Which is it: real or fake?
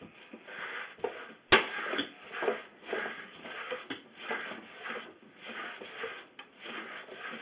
real